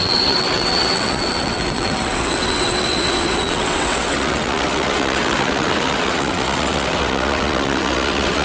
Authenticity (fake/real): fake